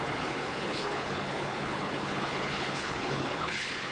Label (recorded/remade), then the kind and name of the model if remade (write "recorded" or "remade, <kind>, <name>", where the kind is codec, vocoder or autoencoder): remade, codec, HILCodec